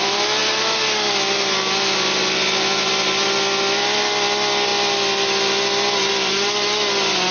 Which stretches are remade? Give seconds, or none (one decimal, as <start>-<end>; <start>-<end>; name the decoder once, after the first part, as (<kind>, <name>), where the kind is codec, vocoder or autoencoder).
none